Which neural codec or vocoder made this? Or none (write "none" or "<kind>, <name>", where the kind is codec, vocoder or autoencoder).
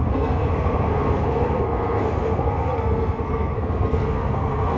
codec, SNAC